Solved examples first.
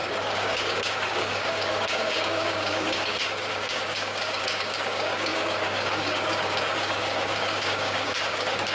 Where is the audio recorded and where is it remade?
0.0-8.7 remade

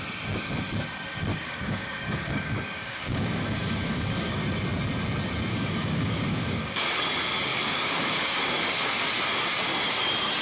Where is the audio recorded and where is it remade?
0.0-1.3 recorded; 1.3-4.4 remade; 4.4-5.5 recorded; 5.5-7.0 remade; 7.0-7.5 recorded; 7.5-9.1 remade; 9.1-10.4 recorded

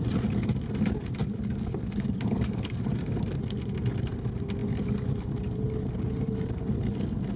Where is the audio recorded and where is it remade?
0.0-1.2 recorded; 1.2-2.8 remade; 2.8-7.4 recorded

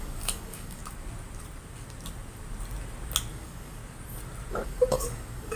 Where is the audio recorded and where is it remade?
0.0-0.8 remade; 0.8-3.3 recorded; 3.3-3.8 remade; 3.8-4.5 recorded; 4.5-5.6 remade

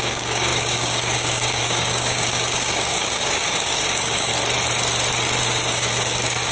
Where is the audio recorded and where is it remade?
0.0-4.3 remade; 4.3-5.4 recorded; 5.4-6.5 remade

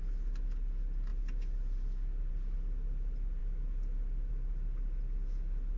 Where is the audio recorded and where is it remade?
0.0-5.8 recorded

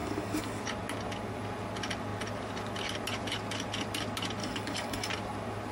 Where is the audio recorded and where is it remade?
0.0-0.6 remade; 0.6-4.4 recorded; 4.4-5.1 remade; 5.1-5.7 recorded

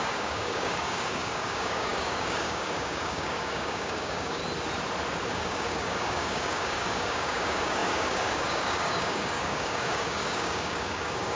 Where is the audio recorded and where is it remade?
0.0-4.4 remade; 4.4-5.3 recorded; 5.3-11.4 remade